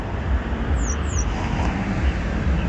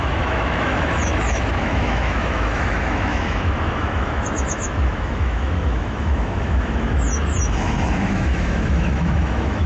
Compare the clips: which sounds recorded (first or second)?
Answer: first